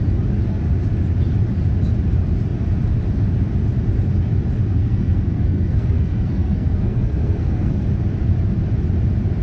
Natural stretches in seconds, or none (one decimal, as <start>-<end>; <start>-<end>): 0.0-4.8; 7.9-9.4